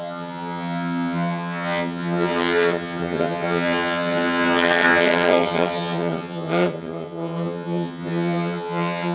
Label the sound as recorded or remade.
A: remade